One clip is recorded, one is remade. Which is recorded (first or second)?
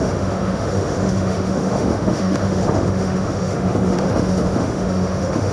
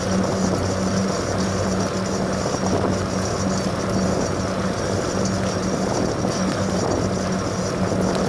second